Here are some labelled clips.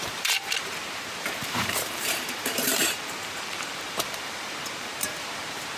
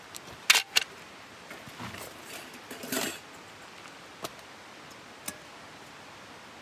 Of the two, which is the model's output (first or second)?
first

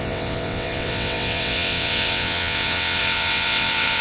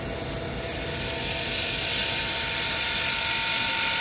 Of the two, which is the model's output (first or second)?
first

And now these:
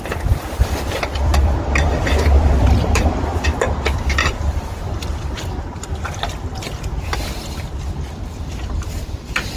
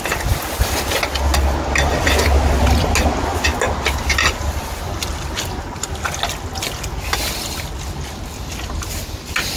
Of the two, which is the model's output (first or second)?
first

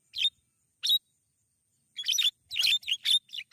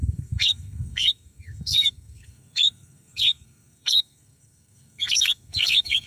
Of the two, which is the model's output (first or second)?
second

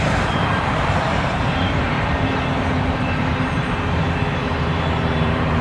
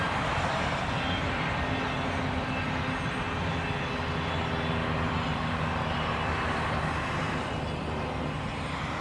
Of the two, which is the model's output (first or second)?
first